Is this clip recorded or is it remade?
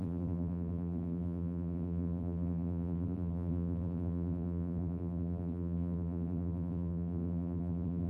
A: remade